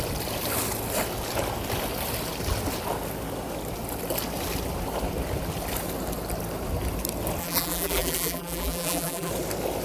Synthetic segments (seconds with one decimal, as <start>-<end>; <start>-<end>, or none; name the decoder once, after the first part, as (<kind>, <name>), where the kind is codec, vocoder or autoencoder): 7.4-9.3 (vocoder, BigVGAN v2)